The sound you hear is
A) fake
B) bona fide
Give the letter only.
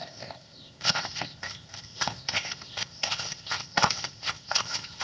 A